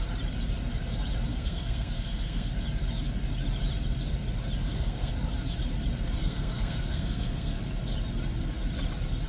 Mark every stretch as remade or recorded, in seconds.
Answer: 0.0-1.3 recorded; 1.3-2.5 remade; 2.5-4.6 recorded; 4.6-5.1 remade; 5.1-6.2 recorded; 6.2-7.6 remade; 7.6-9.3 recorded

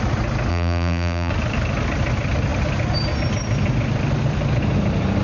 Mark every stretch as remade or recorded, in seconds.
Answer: 0.0-0.5 recorded; 0.5-1.3 remade; 1.3-5.2 recorded

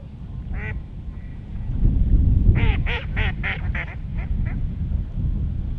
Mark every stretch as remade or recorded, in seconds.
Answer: 0.0-1.3 recorded; 1.3-3.3 remade; 3.3-4.1 recorded; 4.1-4.8 remade; 4.8-5.8 recorded

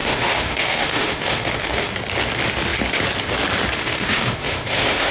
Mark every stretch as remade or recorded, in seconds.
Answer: 0.0-1.9 remade; 1.9-3.8 recorded; 3.8-5.1 remade

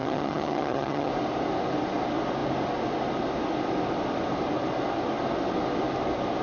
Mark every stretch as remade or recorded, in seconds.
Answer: 0.0-1.1 remade; 1.1-6.4 recorded

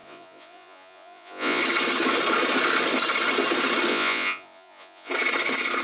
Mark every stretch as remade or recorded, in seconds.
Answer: 0.0-1.6 remade; 1.6-3.9 recorded; 3.9-5.1 remade; 5.1-5.8 recorded

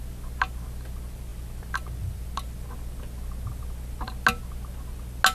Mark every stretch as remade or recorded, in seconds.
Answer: 0.0-5.3 recorded

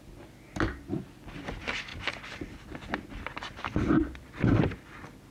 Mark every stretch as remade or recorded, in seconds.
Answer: 0.0-5.3 recorded